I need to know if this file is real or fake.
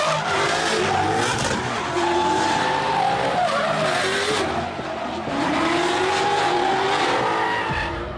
real